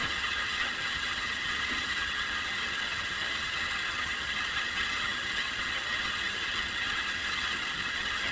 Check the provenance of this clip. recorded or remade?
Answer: remade